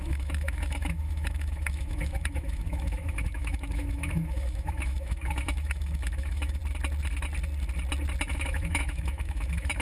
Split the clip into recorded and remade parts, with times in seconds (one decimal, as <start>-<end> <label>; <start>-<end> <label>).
0.0-6.6 remade; 6.6-8.3 recorded; 8.3-9.8 remade